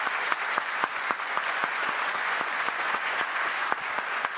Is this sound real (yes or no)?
no